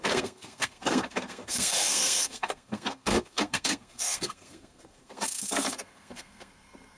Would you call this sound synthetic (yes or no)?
yes